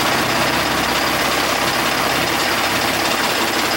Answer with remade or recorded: recorded